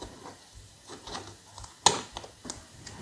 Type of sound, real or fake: real